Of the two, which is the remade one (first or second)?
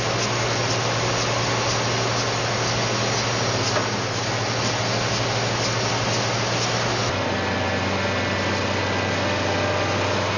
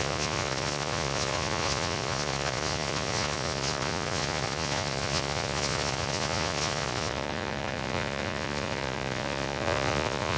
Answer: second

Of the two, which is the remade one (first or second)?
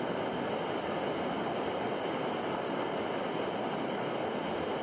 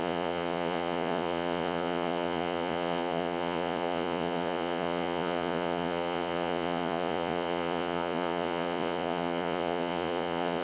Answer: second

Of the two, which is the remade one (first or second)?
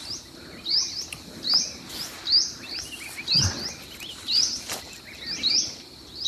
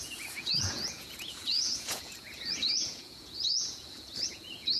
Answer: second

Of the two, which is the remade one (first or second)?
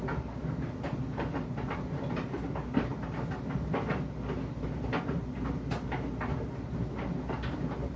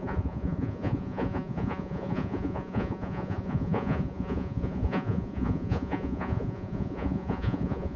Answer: second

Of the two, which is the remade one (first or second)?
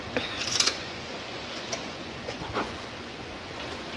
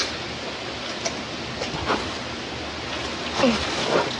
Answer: first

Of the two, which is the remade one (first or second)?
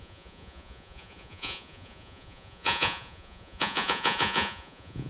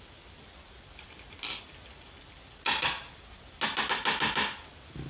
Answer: first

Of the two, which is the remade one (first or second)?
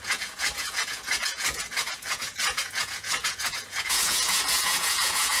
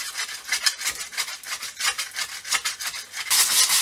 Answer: first